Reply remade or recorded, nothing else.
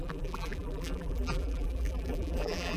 remade